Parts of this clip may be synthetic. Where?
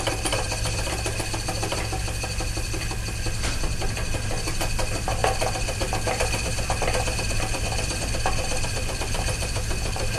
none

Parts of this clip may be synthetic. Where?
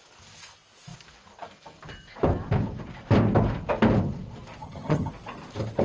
4.6-5.1 (vocoder, HiFi-GAN)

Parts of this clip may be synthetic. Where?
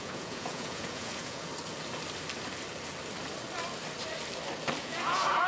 0.0-1.5 (vocoder, Vocos); 4.8-5.5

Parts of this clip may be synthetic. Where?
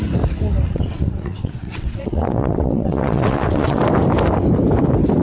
0.7-3.8 (vocoder, WaveNeXt)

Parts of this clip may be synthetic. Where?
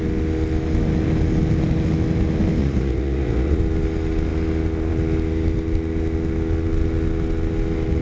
2.6-3.6 (vocoder, Vocos)